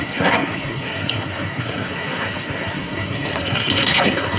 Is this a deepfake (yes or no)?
yes